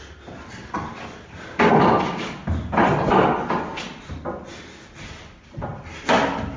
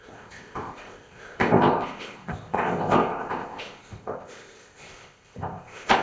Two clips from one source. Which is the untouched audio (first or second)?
first